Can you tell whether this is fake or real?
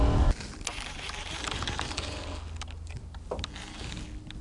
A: real